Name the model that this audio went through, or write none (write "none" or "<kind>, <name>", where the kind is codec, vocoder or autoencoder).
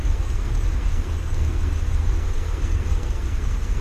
codec, SNAC